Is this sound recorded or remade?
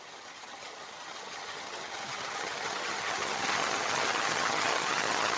remade